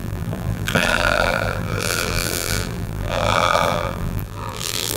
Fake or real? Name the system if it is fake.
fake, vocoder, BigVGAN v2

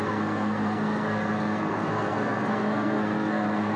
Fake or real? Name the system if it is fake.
fake, codec, SNAC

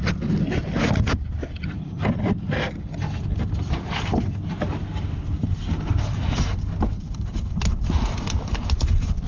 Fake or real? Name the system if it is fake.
real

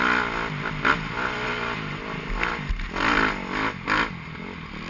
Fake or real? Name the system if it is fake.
real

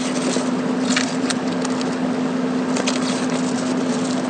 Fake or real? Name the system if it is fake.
real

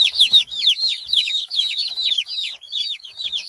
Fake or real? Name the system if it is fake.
fake, codec, DAC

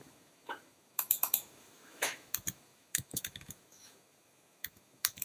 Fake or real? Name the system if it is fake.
fake, autoencoder, DAC-VAE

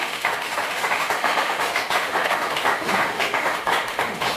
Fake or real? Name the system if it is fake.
fake, autoencoder, DAC-VAE